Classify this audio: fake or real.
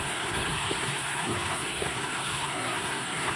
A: fake